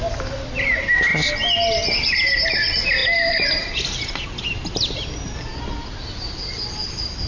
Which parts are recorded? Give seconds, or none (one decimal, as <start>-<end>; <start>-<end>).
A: 1.1-1.9